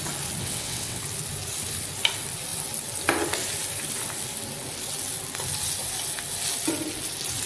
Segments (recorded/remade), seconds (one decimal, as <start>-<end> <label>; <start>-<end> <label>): 0.0-0.4 recorded; 0.4-1.0 remade; 1.0-7.5 recorded